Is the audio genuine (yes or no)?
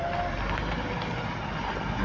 yes